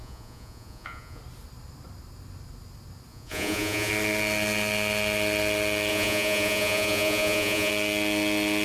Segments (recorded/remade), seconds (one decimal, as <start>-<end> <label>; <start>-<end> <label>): 0.0-1.2 remade; 1.2-3.1 recorded; 3.1-3.9 remade; 3.9-5.9 recorded; 5.9-7.7 remade; 7.7-8.6 recorded